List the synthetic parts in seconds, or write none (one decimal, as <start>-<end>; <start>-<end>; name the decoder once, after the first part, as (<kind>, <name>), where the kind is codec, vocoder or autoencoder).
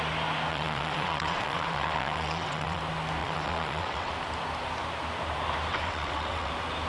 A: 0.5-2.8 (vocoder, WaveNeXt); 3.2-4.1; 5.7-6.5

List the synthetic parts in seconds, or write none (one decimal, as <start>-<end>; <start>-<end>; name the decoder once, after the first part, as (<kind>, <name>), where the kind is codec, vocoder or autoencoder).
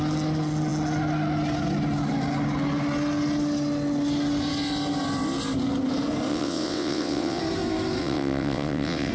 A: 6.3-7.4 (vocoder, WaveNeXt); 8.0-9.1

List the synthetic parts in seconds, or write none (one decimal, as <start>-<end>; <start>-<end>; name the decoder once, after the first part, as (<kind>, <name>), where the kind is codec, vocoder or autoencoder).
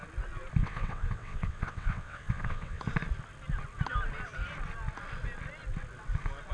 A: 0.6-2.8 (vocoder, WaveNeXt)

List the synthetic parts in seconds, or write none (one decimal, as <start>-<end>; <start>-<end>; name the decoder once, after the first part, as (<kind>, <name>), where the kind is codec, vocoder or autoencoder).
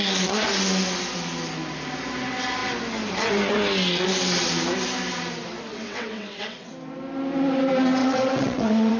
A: 5.7-6.7 (vocoder, WaveNeXt); 8.0-9.0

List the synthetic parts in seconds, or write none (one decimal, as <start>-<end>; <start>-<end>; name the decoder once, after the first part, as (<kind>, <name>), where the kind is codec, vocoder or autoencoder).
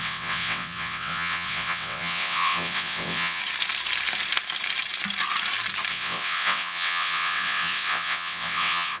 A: 0.0-3.4 (vocoder, WaveNeXt); 5.9-9.0